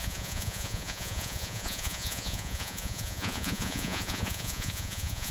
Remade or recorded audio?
remade